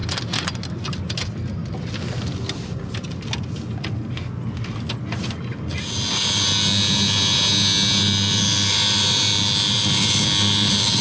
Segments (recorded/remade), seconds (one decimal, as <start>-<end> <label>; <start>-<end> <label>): 0.0-11.0 recorded